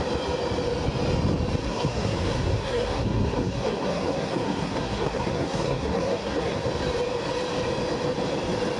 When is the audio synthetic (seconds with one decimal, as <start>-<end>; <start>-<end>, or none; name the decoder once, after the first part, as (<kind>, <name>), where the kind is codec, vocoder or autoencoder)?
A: 1.6-6.7 (codec, SNAC)